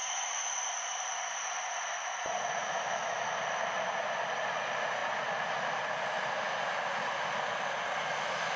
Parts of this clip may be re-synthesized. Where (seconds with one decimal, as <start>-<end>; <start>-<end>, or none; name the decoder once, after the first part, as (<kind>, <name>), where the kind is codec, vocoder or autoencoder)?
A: 2.6-3.2 (autoencoder, DAC-VAE)